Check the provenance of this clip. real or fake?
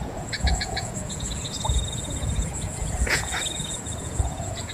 fake